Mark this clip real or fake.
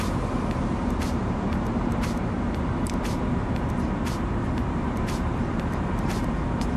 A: fake